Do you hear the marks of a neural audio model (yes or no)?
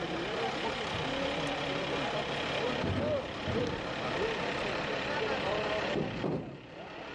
yes